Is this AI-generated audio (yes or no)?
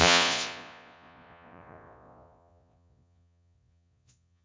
yes